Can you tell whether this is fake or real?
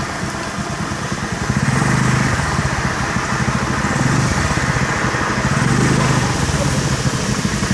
real